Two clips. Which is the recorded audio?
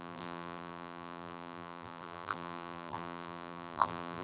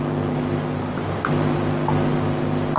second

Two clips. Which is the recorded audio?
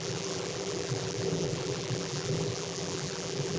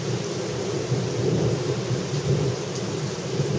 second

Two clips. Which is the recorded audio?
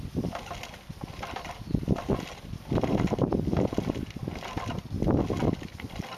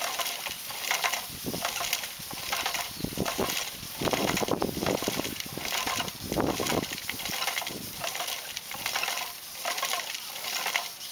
first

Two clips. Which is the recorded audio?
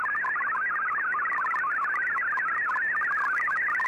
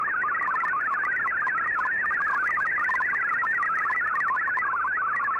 first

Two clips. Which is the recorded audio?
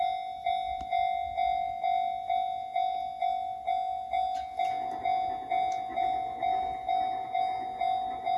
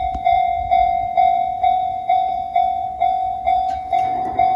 first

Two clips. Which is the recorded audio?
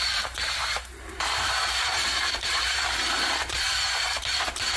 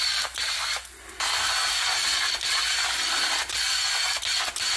second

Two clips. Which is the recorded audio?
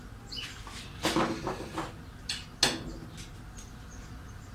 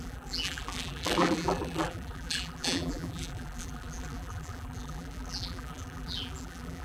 first